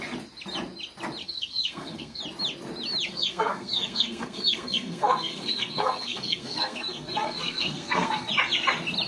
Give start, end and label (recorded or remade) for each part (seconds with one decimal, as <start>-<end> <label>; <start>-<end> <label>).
0.0-1.2 recorded; 1.2-2.2 remade; 2.2-3.1 recorded; 3.1-8.3 remade; 8.3-9.1 recorded